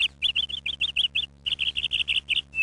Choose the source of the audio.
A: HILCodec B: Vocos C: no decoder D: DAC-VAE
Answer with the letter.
C